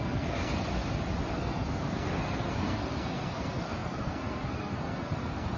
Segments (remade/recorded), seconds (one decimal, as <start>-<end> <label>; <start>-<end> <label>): 0.0-0.7 remade; 0.7-1.3 recorded; 1.3-5.6 remade